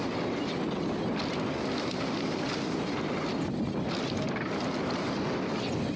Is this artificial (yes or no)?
no